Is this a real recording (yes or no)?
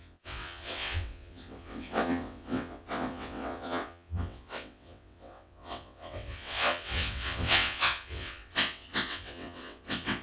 no